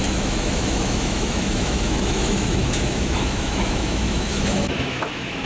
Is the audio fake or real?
fake